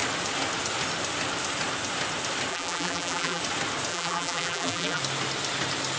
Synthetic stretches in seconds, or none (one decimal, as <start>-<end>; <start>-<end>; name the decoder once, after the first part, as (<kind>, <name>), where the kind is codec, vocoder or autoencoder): 2.5-3.4 (vocoder, BigVGAN v2); 3.9-5.0